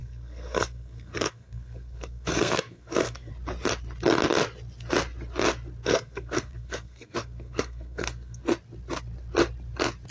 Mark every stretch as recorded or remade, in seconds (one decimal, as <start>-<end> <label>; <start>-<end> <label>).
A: 0.0-3.3 remade; 3.3-5.8 recorded; 5.8-8.4 remade; 8.4-10.1 recorded